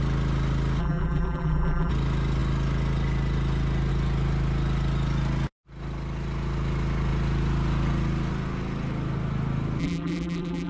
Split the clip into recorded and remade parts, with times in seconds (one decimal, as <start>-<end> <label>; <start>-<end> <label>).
0.0-0.8 recorded; 0.8-1.9 remade; 1.9-9.8 recorded; 9.8-10.7 remade